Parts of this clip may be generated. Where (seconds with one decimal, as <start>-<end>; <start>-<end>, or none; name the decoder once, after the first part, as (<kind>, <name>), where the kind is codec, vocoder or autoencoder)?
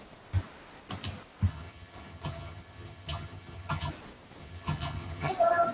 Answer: 1.5-3.9 (vocoder, HiFi-GAN); 4.4-5.3